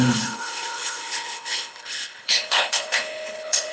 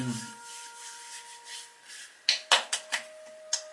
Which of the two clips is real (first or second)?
second